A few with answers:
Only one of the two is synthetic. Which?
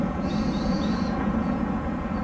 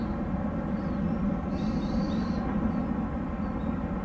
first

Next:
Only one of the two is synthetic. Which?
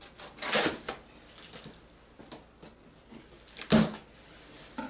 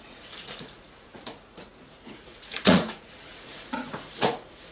second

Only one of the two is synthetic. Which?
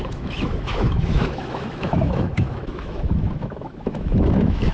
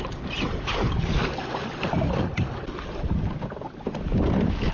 first